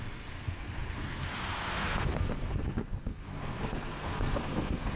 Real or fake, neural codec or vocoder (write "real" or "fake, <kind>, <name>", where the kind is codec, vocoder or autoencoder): fake, codec, SNAC